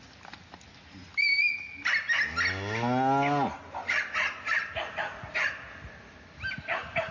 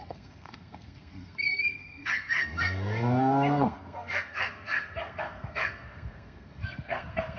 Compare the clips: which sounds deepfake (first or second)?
second